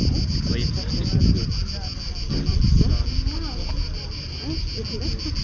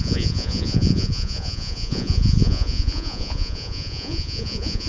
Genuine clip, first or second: first